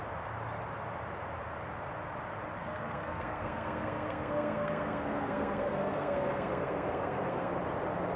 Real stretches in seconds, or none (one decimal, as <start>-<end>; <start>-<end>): 0.0-2.6; 7.5-8.2